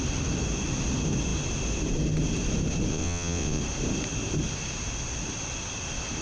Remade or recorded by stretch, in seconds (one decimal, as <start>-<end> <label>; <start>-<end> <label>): 0.0-2.9 recorded; 2.9-3.6 remade; 3.6-6.2 recorded